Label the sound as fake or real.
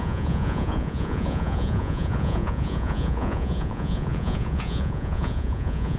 fake